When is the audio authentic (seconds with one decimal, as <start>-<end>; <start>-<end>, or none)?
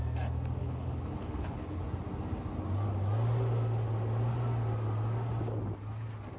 0.0-0.6; 1.8-6.4